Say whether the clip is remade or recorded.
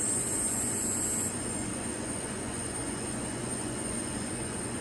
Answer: remade